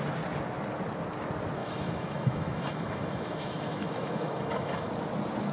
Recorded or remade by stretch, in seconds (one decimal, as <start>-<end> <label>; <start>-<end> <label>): 0.0-1.6 recorded; 1.6-4.9 remade; 4.9-5.5 recorded

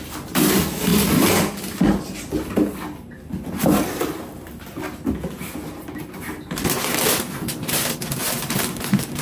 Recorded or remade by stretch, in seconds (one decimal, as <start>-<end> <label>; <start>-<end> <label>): 0.0-9.2 recorded

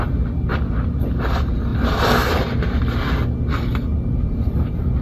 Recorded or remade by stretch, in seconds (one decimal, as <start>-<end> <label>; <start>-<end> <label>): 0.0-1.7 recorded; 1.7-2.8 remade; 2.8-3.9 recorded; 3.9-5.0 remade

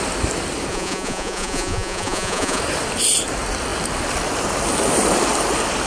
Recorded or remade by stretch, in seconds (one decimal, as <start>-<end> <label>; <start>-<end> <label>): 0.0-0.7 recorded; 0.7-2.6 remade; 2.6-5.9 recorded

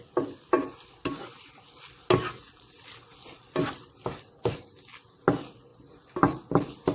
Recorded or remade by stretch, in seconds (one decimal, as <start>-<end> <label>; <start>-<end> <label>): 0.0-6.9 recorded